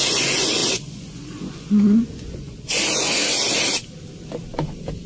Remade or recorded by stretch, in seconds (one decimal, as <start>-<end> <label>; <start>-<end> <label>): 0.0-3.2 remade; 3.2-5.1 recorded